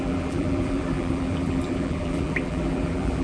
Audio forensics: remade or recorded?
remade